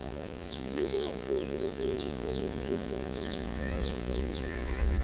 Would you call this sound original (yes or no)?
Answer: no